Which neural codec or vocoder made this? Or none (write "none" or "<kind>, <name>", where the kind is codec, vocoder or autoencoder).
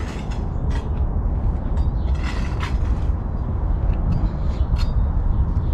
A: none